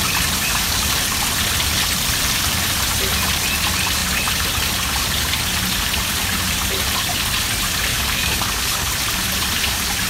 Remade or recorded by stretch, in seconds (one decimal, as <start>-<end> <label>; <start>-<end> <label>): 0.0-0.4 recorded; 0.4-0.9 remade; 0.9-7.9 recorded; 7.9-8.9 remade; 8.9-10.1 recorded